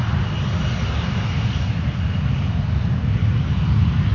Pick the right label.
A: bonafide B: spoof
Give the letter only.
A